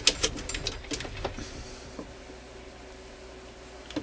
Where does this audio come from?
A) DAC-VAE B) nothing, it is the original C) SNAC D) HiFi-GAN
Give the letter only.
B